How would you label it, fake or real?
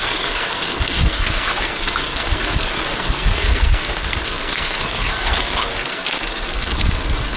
fake